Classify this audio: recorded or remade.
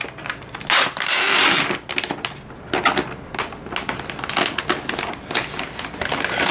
recorded